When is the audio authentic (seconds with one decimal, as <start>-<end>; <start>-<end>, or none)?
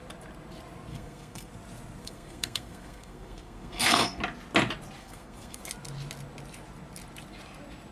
0.0-0.9; 1.5-2.0; 4.2-5.0; 5.6-7.9